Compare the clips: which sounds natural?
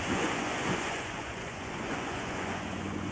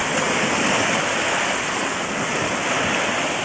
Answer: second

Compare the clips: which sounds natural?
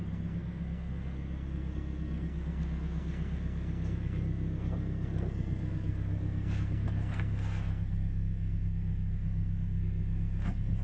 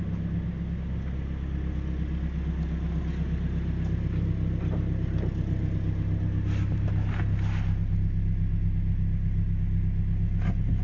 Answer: second